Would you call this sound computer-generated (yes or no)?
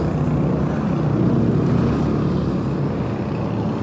no